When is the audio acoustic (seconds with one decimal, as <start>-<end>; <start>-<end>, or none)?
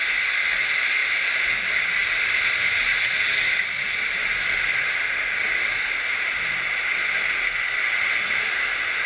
0.0-9.1